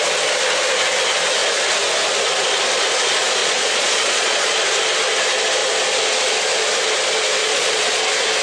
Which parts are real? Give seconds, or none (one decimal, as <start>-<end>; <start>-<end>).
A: 0.0-3.4; 4.5-7.4; 8.0-8.4